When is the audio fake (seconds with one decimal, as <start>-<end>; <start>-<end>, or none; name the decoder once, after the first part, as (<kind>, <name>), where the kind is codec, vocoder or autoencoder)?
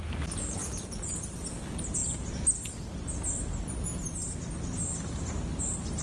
0.6-1.1 (vocoder, Vocos)